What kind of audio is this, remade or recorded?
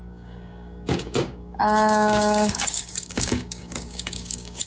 remade